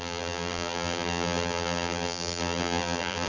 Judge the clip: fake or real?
fake